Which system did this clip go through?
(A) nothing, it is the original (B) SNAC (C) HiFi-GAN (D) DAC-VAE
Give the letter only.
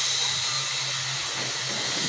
A